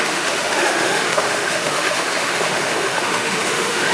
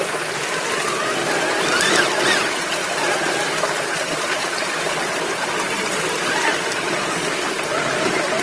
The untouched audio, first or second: second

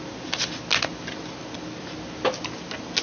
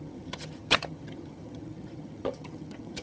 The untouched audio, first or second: first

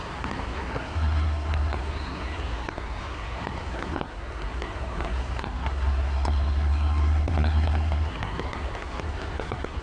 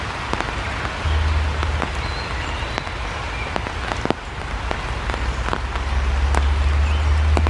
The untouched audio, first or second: second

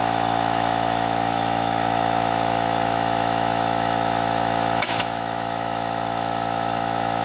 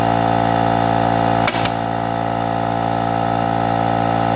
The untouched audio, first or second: second